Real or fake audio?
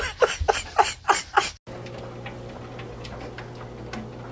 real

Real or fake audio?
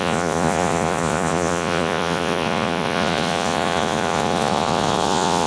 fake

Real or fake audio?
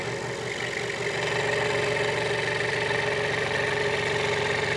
real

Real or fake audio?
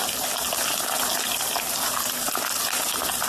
real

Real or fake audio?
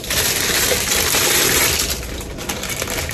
fake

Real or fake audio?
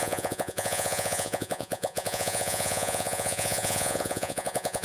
fake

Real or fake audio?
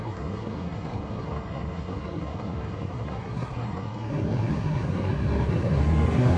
fake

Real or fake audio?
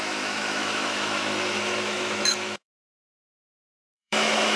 fake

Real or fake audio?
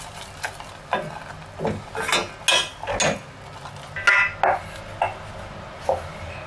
real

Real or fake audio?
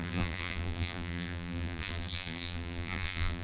fake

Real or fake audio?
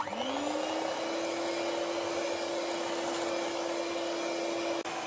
real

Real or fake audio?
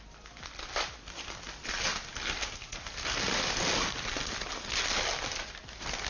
real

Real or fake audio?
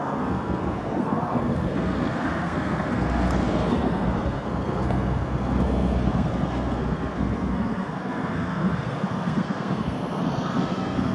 fake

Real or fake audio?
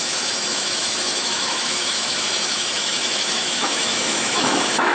fake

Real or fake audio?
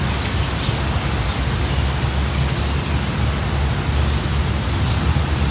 real